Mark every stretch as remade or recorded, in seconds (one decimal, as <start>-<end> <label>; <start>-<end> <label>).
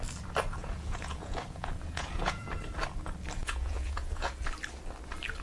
0.0-0.6 recorded; 0.6-2.6 remade; 2.6-3.4 recorded; 3.4-4.4 remade; 4.4-5.4 recorded